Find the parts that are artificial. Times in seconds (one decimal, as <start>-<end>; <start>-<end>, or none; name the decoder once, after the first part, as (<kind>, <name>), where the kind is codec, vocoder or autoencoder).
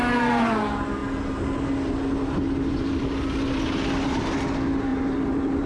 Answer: 4.9-5.7 (vocoder, BigVGAN v2)